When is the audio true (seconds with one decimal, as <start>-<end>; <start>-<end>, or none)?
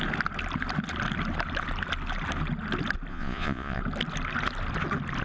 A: 0.0-3.1; 3.8-5.2